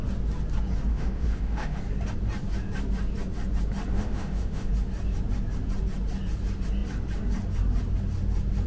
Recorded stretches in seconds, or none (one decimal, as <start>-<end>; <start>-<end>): 0.0-0.9; 1.8-3.9; 4.7-8.7